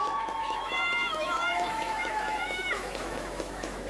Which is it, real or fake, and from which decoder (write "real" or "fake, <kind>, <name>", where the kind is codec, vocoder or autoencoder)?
fake, autoencoder, DAC-VAE